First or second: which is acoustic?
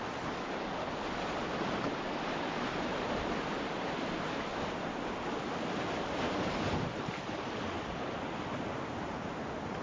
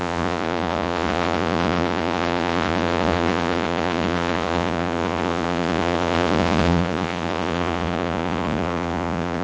first